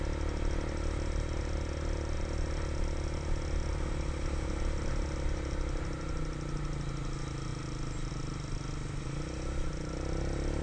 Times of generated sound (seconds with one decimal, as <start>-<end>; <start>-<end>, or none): none